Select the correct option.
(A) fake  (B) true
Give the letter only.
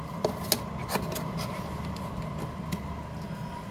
B